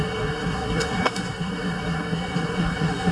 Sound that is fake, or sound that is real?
fake